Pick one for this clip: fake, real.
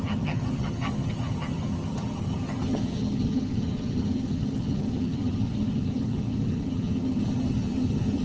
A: fake